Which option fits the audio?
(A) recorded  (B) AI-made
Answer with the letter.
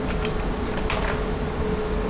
A